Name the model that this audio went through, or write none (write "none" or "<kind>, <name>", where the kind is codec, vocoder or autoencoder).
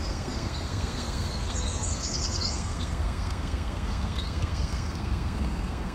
codec, SNAC